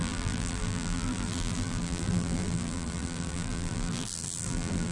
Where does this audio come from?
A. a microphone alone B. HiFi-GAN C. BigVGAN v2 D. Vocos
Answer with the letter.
C